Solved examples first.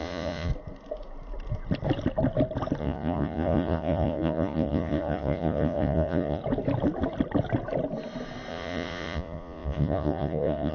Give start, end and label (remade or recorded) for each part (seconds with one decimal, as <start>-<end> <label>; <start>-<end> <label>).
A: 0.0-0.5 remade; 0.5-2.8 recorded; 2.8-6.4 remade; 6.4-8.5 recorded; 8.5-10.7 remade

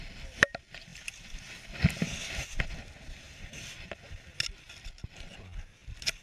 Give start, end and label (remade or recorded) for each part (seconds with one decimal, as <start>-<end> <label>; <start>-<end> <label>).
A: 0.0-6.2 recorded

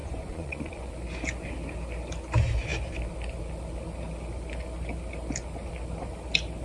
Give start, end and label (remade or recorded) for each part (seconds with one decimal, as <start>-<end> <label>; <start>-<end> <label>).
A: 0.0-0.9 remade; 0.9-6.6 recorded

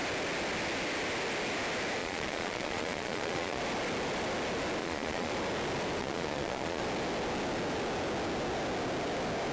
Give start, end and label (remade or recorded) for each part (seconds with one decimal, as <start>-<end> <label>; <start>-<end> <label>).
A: 0.0-2.0 recorded; 2.0-3.6 remade; 3.6-4.8 recorded; 4.8-5.3 remade; 5.3-6.0 recorded; 6.0-6.8 remade; 6.8-9.5 recorded

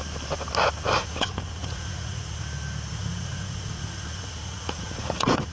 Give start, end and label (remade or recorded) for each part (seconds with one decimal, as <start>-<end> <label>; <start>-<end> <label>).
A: 0.0-1.0 recorded; 1.0-2.4 remade; 2.4-2.9 recorded; 2.9-5.5 remade

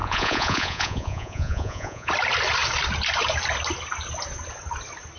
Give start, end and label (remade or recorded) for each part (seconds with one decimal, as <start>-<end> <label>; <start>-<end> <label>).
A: 0.0-2.1 remade; 2.1-5.2 recorded

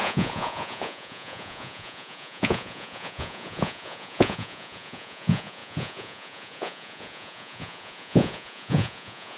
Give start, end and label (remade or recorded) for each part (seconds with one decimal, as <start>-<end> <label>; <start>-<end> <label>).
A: 0.0-9.4 remade

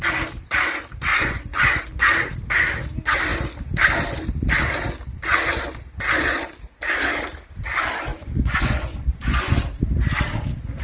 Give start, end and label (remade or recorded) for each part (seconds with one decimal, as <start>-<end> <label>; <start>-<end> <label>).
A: 0.0-1.1 recorded; 1.1-1.8 remade; 1.8-8.1 recorded; 8.1-9.6 remade; 9.6-10.8 recorded